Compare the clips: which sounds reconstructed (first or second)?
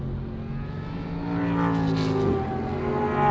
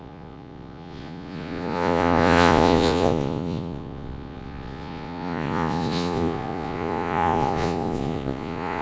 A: second